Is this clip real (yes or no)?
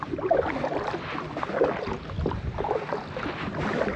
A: yes